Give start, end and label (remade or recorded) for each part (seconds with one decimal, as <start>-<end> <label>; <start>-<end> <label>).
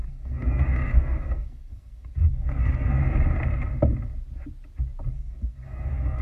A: 0.0-3.0 remade; 3.0-5.1 recorded; 5.1-6.2 remade